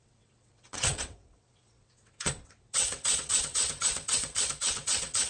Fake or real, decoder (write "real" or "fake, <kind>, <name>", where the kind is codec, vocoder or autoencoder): fake, vocoder, WaveNeXt